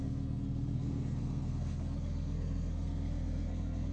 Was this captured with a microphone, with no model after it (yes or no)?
no